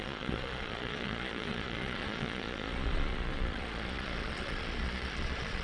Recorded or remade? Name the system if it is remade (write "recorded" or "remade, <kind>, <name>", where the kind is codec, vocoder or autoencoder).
remade, vocoder, Vocos